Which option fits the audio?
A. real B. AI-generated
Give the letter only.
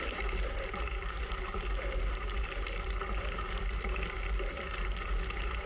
B